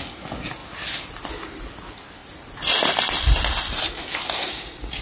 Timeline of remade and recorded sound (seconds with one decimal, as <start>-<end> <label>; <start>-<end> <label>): 0.0-5.0 recorded